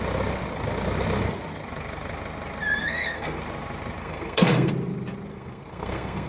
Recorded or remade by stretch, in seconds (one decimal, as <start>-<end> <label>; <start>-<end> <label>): 0.0-2.8 recorded; 2.8-3.4 remade; 3.4-4.0 recorded; 4.0-4.7 remade; 4.7-5.3 recorded; 5.3-6.3 remade